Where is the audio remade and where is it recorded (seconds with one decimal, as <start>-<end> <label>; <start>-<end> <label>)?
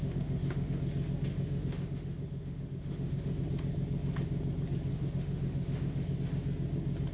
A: 0.0-0.8 remade; 0.8-1.3 recorded; 1.3-3.4 remade; 3.4-4.9 recorded; 4.9-6.2 remade; 6.2-7.1 recorded